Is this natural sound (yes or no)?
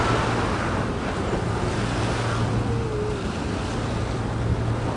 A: yes